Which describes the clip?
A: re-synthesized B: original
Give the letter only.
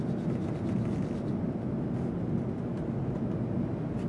B